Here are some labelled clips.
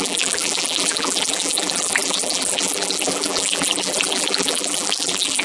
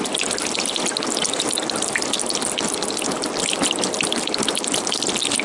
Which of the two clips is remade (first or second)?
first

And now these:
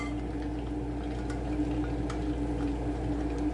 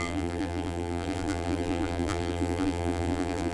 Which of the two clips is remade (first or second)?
second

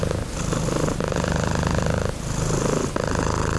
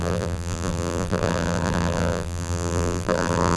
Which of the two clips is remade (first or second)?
second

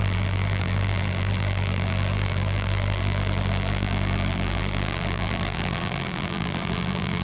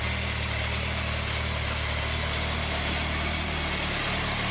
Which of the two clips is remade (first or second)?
first